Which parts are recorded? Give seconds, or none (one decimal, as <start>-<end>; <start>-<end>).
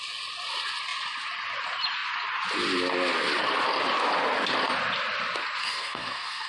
0.0-5.6